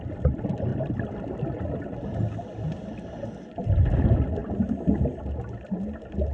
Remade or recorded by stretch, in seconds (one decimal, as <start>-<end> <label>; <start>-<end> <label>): 0.0-0.7 recorded; 0.7-1.5 remade; 1.5-4.4 recorded; 4.4-5.2 remade; 5.2-6.3 recorded